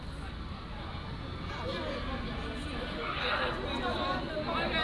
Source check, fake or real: real